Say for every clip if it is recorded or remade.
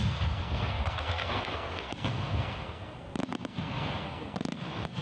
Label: remade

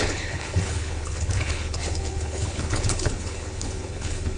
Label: remade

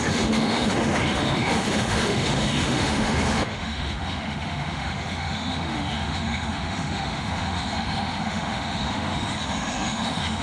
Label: remade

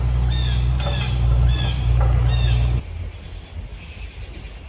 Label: recorded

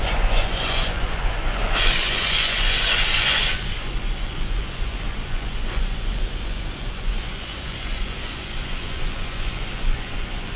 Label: remade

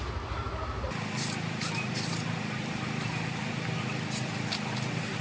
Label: recorded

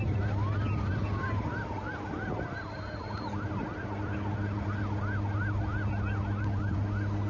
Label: recorded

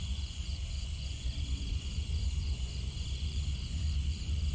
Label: remade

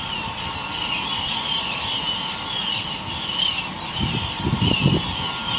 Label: recorded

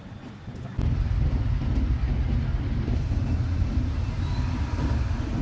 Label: recorded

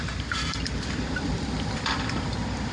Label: remade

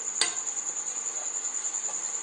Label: recorded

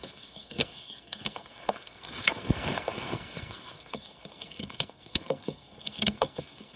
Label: remade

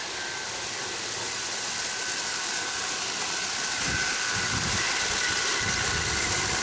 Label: remade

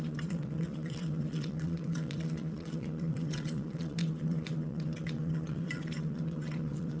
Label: remade